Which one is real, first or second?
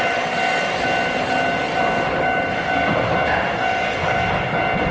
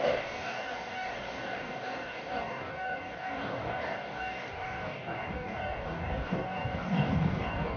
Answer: first